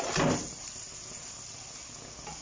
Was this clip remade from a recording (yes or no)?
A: no